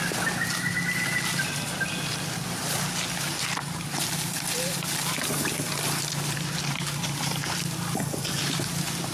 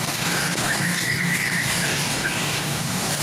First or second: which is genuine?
first